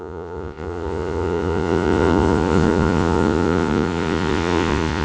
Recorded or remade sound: remade